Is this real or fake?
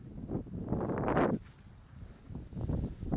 real